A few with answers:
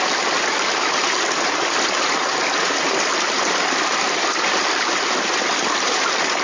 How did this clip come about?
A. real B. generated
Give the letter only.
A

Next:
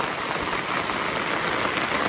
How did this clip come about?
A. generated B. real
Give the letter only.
B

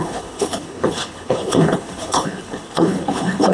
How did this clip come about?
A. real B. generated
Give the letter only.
B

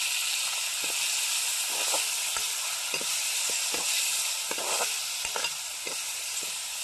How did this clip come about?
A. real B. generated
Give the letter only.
A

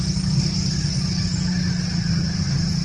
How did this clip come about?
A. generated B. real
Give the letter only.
B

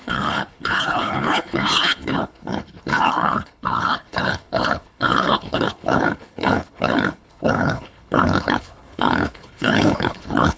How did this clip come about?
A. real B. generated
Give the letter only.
B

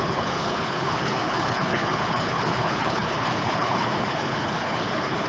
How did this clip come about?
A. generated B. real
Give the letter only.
A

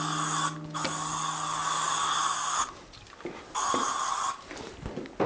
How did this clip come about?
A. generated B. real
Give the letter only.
B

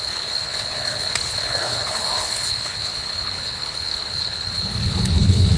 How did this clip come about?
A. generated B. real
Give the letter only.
A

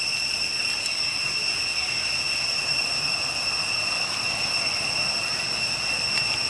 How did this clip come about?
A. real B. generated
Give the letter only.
A